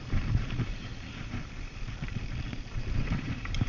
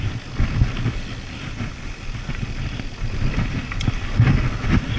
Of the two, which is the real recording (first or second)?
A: second